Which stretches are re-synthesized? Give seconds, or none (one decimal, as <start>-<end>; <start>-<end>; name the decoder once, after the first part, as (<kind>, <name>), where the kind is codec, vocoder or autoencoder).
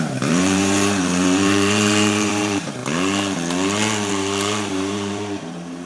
0.0-2.8 (vocoder, BigVGAN v2); 4.1-5.9